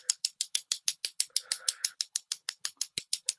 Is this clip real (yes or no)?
no